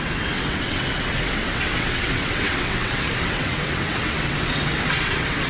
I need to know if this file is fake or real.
fake